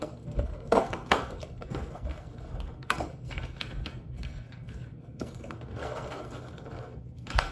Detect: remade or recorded remade